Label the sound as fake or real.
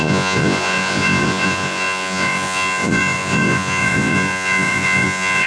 fake